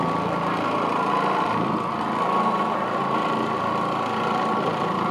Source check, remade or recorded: recorded